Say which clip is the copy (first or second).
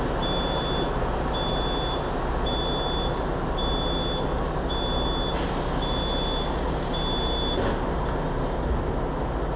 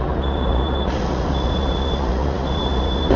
second